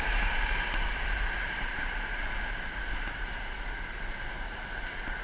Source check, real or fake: real